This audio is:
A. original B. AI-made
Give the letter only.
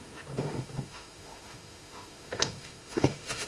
B